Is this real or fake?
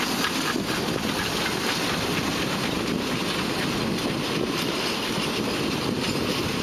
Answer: real